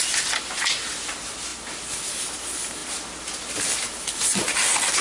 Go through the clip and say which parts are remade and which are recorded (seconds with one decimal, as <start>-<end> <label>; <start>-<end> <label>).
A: 0.0-5.0 recorded